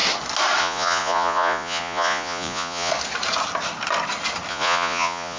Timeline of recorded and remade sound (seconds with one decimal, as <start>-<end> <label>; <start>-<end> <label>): 0.0-0.6 recorded; 0.6-2.9 remade; 2.9-4.5 recorded; 4.5-5.4 remade